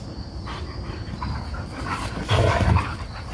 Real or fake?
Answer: real